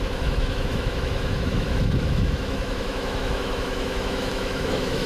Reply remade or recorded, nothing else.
remade